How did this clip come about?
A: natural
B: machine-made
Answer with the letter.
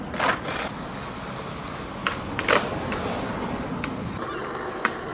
A